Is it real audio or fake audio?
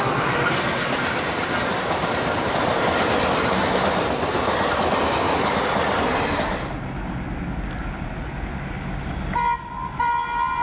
real